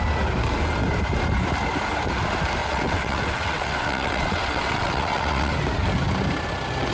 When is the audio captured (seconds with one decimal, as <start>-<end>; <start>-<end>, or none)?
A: 0.0-2.6; 5.5-6.9